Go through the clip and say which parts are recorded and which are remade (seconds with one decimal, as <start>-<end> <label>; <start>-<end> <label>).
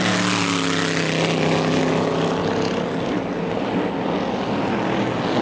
0.0-5.4 recorded